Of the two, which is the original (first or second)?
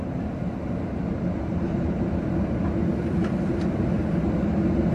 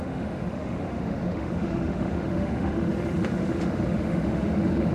first